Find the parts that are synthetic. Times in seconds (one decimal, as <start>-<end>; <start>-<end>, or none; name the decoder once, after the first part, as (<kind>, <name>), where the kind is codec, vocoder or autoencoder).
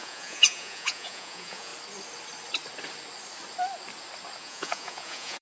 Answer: 0.0-1.7 (vocoder, Vocos); 4.4-5.4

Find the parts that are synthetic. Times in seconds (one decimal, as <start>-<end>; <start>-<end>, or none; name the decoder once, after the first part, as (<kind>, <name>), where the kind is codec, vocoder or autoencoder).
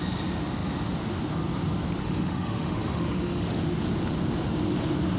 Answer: 2.0-3.6 (autoencoder, DAC-VAE)